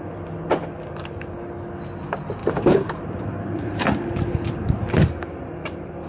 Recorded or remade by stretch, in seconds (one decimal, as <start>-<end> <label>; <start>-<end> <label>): 0.0-2.4 recorded; 2.4-6.1 remade